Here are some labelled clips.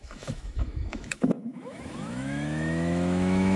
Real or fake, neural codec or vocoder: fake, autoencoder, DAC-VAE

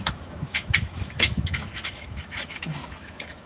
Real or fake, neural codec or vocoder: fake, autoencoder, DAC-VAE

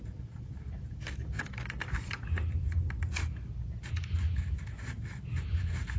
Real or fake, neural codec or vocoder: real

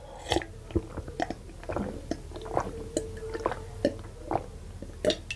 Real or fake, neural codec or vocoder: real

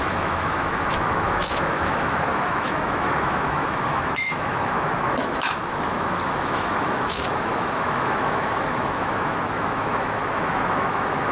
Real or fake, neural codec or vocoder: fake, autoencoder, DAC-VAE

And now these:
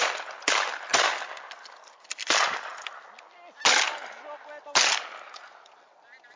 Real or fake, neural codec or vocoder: real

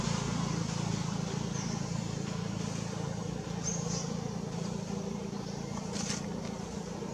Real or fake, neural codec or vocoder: real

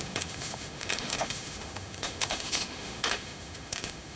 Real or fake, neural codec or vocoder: fake, autoencoder, DAC-VAE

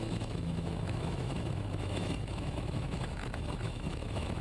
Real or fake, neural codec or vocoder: fake, autoencoder, DAC-VAE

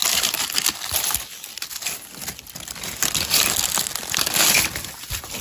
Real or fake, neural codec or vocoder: real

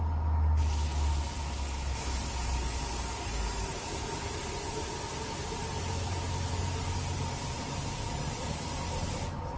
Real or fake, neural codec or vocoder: real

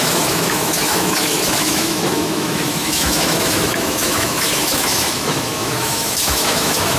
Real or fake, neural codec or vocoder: fake, autoencoder, DAC-VAE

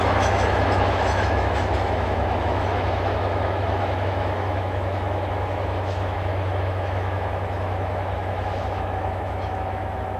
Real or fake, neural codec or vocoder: fake, autoencoder, DAC-VAE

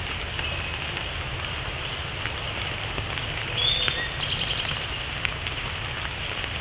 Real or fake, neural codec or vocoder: real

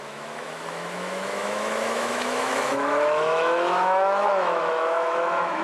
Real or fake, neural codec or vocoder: fake, autoencoder, DAC-VAE